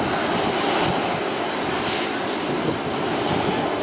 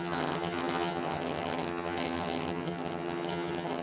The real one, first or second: first